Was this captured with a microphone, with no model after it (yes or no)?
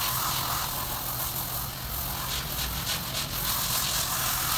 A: yes